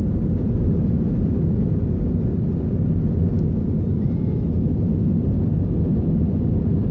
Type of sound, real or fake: real